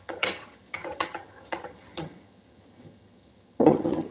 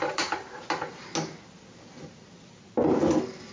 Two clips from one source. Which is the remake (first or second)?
first